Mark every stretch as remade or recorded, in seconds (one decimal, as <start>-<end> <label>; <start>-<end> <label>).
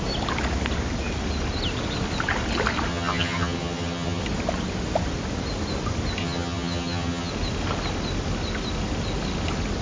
0.0-2.9 recorded; 2.9-4.2 remade; 4.2-6.2 recorded; 6.2-7.3 remade; 7.3-9.8 recorded